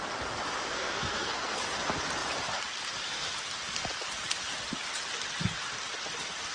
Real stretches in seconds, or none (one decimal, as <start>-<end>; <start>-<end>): 0.0-0.7; 1.6-6.5